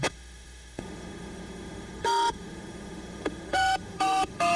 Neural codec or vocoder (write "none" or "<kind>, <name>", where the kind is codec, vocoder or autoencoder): autoencoder, DAC-VAE